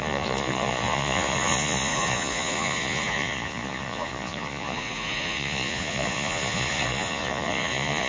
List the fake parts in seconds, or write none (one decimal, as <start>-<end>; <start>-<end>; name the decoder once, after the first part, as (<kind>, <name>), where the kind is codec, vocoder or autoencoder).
0.0-8.1 (vocoder, Vocos)